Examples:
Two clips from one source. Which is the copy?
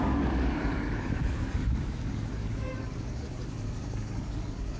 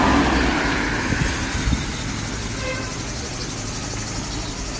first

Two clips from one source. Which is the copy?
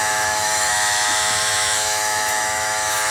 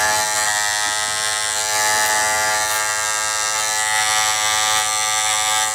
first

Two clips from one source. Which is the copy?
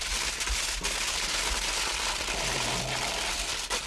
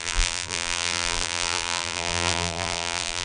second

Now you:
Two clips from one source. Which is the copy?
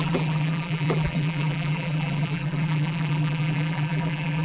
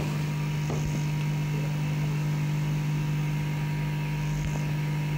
first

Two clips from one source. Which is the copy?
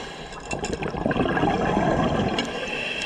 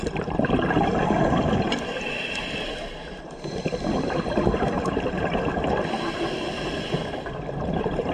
second